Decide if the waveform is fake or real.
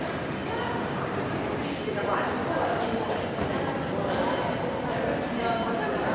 real